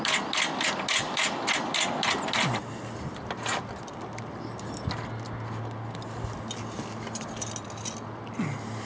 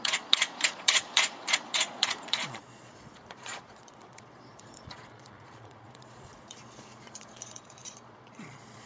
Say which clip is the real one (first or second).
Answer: first